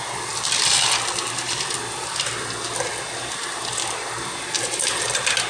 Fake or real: real